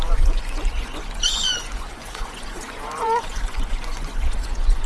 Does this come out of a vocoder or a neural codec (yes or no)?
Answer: yes